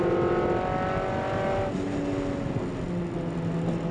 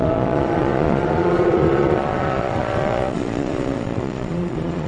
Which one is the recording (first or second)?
first